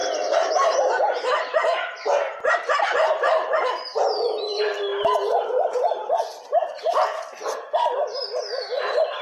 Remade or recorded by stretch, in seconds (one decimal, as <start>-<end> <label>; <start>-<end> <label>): 0.0-0.5 remade; 0.5-4.9 recorded; 4.9-6.9 remade; 6.9-9.2 recorded